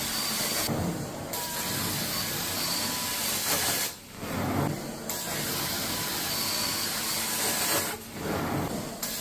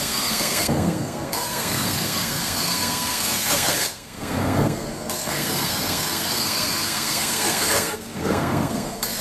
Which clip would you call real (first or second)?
first